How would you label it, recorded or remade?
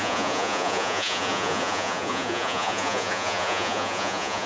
remade